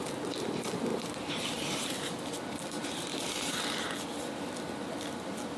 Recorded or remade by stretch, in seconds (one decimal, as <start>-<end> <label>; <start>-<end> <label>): 0.0-0.9 recorded; 0.9-2.1 remade; 2.1-5.6 recorded

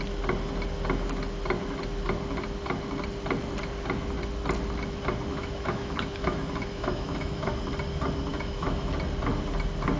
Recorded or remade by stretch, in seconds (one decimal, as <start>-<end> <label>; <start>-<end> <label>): 0.0-5.3 recorded; 5.3-7.5 remade; 7.5-8.3 recorded; 8.3-8.9 remade; 8.9-10.0 recorded

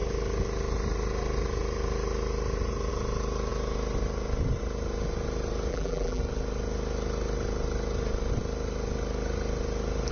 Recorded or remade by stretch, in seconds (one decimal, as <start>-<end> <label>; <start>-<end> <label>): 0.0-5.7 recorded; 5.7-6.2 remade; 6.2-10.1 recorded

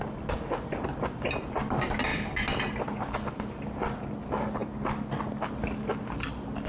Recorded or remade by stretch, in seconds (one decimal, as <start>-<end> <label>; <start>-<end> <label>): 0.0-6.7 recorded

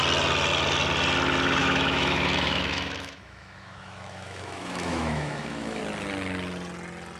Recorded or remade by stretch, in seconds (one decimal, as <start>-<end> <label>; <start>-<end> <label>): 0.0-1.6 recorded; 1.6-5.8 remade; 5.8-7.2 recorded